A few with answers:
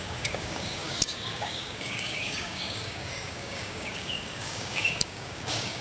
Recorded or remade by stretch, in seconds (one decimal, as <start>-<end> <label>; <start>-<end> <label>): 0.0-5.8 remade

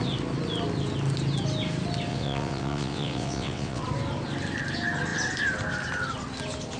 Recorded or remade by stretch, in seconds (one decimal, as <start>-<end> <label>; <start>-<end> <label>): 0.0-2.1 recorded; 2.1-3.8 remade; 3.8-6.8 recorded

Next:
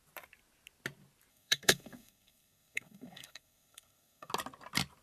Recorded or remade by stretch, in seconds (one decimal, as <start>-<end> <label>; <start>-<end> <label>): 0.0-1.3 recorded; 1.3-4.3 remade; 4.3-5.0 recorded